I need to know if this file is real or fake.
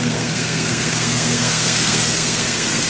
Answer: fake